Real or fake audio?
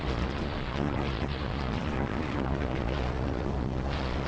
fake